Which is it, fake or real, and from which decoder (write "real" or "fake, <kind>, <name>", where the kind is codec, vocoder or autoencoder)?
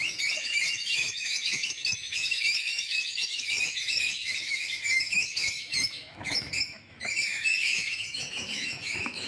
fake, autoencoder, DAC-VAE